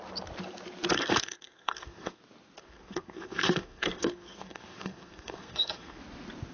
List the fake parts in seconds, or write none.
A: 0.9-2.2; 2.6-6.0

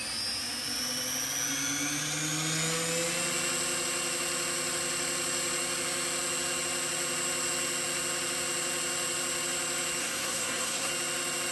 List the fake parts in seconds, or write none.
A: 10.0-10.9